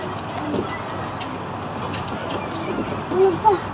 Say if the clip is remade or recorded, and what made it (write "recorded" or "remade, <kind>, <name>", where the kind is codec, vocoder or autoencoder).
recorded